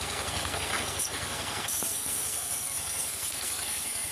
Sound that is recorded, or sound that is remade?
remade